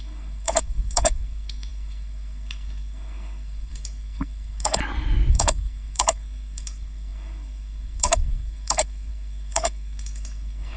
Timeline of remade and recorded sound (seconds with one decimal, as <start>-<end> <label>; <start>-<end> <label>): 0.0-4.8 remade; 4.8-5.3 recorded; 5.3-10.8 remade